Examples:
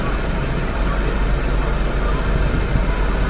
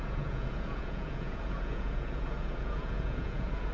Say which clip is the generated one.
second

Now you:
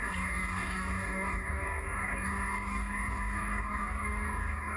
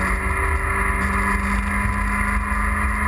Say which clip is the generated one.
first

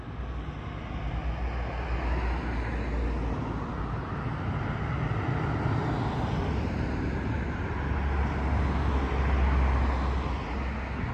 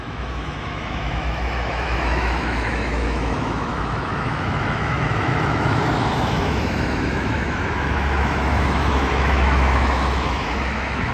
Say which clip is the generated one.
second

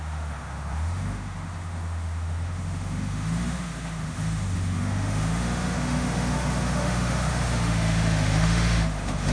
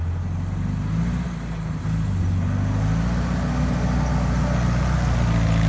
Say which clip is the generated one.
first